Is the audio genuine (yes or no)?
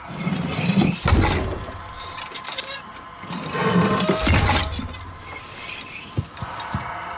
yes